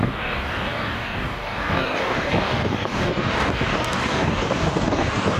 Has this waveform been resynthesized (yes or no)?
yes